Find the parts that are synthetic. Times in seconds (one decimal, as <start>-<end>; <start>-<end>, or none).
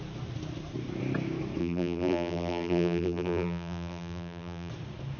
1.6-4.7